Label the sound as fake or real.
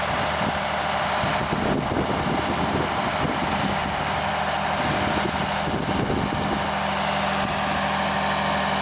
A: real